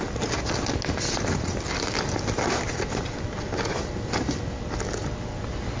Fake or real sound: real